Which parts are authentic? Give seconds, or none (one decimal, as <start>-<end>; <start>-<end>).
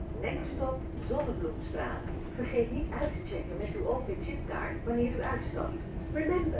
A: 0.4-1.7; 5.9-6.6